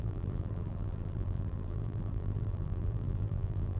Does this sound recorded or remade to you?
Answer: remade